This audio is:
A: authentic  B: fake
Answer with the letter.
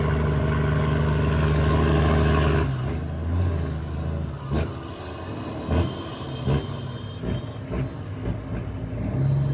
A